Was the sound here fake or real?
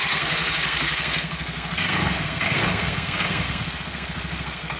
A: fake